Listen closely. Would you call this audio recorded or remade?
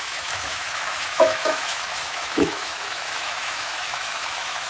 remade